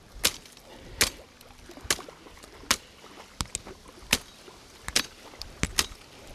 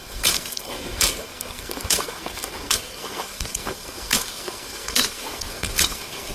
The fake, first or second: second